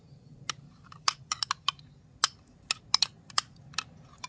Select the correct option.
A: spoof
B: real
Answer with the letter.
B